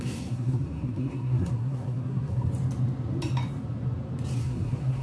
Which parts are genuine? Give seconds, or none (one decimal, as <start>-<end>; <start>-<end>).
2.5-4.4